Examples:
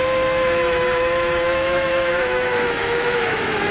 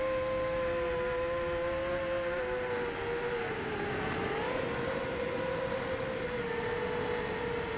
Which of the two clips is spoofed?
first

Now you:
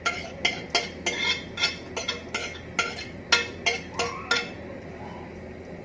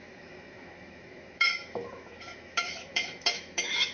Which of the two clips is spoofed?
second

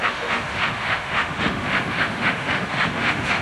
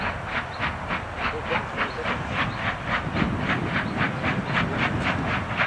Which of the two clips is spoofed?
first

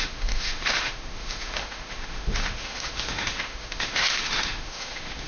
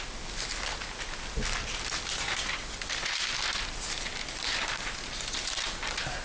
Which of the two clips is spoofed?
first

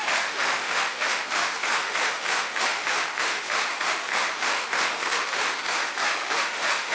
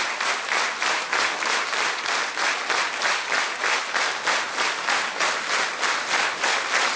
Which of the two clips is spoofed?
first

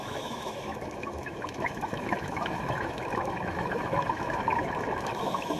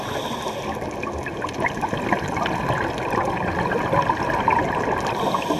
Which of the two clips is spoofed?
first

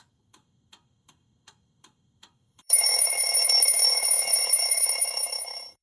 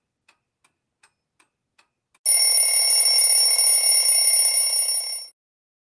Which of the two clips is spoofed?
first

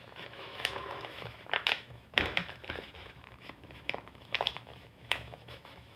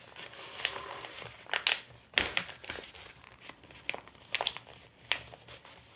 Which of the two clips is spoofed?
first